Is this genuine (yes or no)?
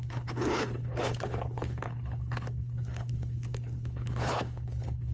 no